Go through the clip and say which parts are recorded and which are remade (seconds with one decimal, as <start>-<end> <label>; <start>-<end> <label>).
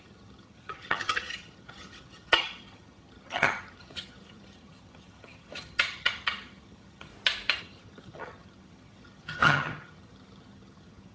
0.0-7.1 remade; 7.1-7.6 recorded; 7.6-11.1 remade